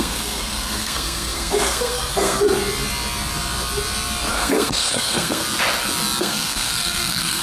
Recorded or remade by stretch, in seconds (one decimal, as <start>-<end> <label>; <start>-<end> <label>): 0.0-2.4 remade; 2.4-4.3 recorded; 4.3-5.4 remade; 5.4-6.2 recorded; 6.2-7.4 remade